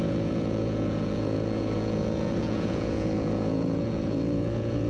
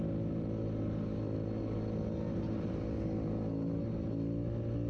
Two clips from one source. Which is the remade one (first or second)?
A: first